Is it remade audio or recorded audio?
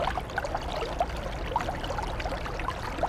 recorded